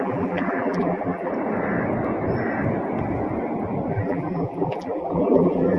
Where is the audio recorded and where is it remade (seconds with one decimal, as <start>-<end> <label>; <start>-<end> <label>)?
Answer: 0.0-1.3 remade; 1.3-3.9 recorded; 3.9-5.8 remade

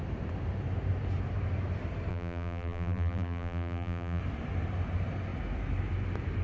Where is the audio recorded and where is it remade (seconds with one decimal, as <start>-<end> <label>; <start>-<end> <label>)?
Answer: 0.0-2.1 recorded; 2.1-4.2 remade; 4.2-6.4 recorded